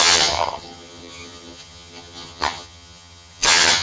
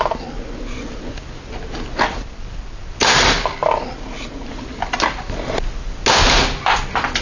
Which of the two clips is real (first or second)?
second